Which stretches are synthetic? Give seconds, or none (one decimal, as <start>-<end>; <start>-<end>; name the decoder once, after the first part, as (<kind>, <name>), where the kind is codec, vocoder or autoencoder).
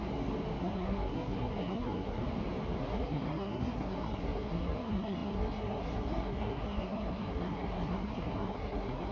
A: 0.6-2.2 (codec, SNAC); 2.8-9.1